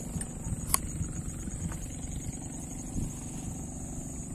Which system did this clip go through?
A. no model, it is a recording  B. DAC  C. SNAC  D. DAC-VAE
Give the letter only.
A